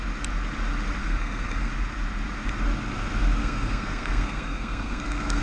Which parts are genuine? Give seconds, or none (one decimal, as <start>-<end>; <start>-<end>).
0.0-1.0; 1.7-3.4